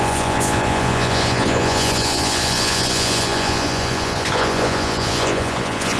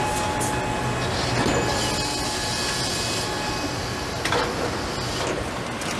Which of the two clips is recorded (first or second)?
second